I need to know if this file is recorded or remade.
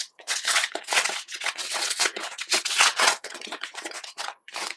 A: remade